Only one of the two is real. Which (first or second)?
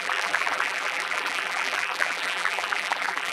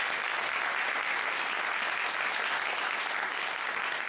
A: second